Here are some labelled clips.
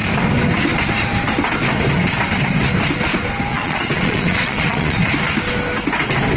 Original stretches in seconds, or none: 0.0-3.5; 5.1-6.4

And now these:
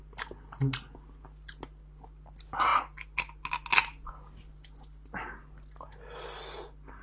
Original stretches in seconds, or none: 0.0-7.0

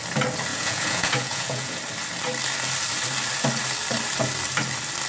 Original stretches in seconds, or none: 0.0-0.5; 1.8-5.1

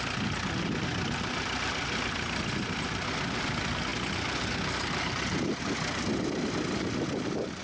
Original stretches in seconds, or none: 0.0-7.6

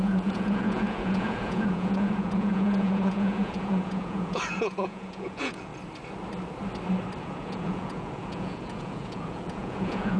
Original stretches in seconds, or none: 5.7-7.2